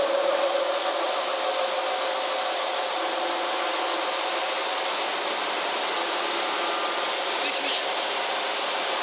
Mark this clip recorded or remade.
recorded